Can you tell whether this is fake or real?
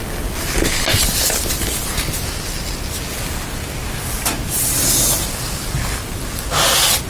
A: real